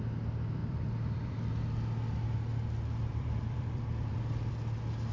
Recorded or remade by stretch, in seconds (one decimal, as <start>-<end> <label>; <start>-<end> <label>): 0.0-0.6 recorded; 0.6-1.5 remade; 1.5-2.5 recorded; 2.5-4.5 remade; 4.5-5.1 recorded